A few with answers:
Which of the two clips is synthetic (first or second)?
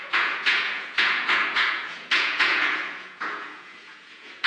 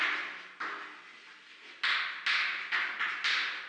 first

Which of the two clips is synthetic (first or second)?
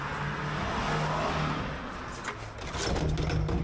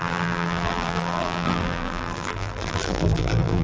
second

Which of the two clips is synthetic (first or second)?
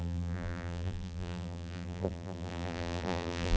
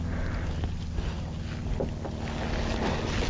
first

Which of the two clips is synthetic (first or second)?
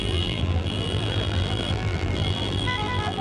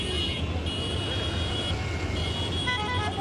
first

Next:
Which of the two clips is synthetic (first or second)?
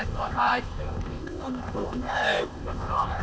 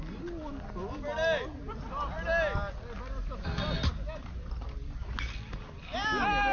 first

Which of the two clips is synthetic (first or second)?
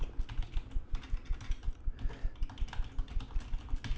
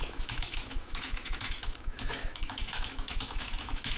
second